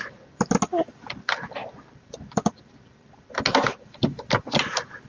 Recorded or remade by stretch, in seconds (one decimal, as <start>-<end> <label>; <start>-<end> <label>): 0.0-5.1 recorded